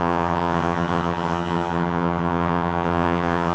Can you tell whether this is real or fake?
fake